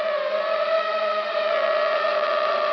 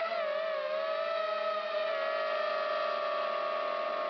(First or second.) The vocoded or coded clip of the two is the first